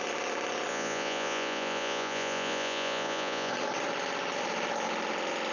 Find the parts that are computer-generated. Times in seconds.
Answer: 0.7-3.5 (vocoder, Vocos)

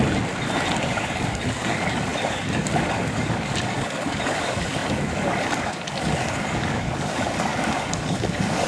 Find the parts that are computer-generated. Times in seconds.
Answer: 0.8-8.7 (codec, DAC)

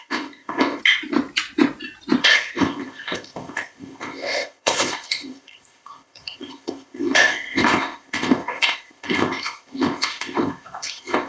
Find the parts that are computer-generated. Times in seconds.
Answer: 0.0-0.8 (codec, ZipCodec); 2.2-11.3

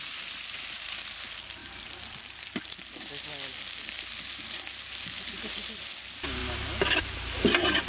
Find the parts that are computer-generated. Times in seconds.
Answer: none